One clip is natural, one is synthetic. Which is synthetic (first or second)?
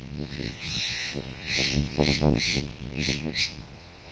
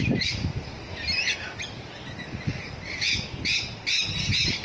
first